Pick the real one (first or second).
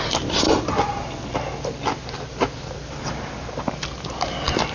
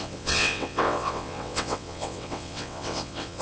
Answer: first